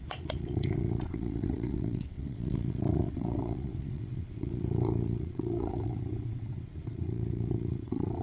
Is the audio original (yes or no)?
no